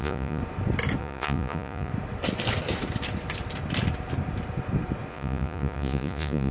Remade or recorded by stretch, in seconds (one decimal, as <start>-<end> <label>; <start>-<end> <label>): 0.0-0.4 remade; 0.4-1.0 recorded; 1.0-1.9 remade; 1.9-5.1 recorded; 5.1-6.5 remade